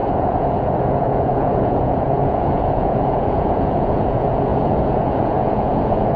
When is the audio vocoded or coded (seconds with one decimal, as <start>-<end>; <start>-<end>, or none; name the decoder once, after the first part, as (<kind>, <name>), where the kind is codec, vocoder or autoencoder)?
0.0-6.2 (vocoder, Vocos)